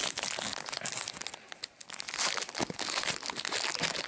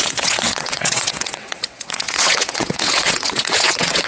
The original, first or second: first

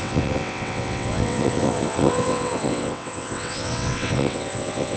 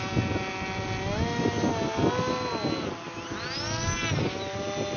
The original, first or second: second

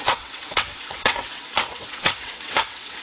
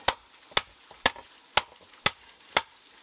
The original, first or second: second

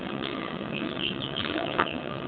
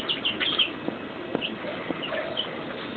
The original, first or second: second